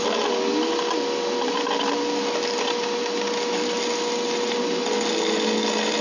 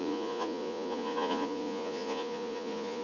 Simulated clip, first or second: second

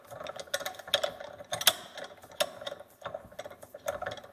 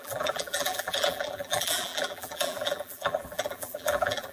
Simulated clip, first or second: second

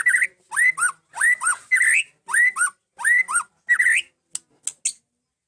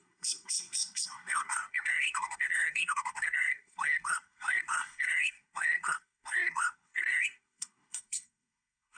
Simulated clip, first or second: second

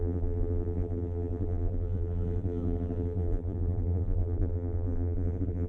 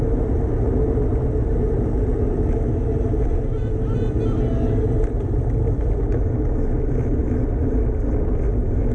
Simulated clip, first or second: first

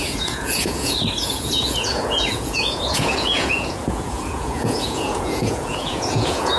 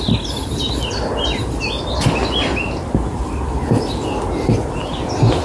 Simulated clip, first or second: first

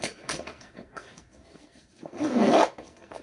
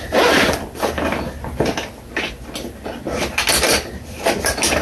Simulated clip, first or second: first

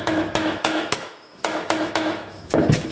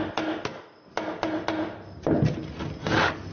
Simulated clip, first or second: first